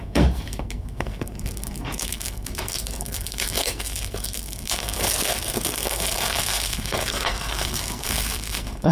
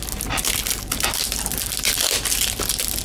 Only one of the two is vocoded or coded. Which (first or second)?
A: first